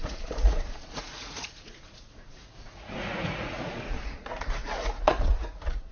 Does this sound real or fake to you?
fake